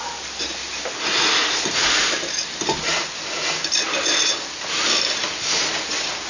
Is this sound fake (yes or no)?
no